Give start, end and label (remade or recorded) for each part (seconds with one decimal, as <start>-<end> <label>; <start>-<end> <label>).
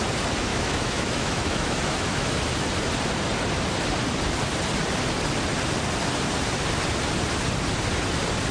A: 0.0-0.5 recorded; 0.5-2.4 remade; 2.4-8.5 recorded